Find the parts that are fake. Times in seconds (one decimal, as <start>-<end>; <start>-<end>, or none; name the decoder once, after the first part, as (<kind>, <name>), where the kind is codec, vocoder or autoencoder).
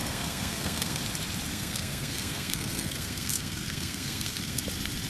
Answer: 0.0-1.0 (codec, SNAC); 1.5-4.6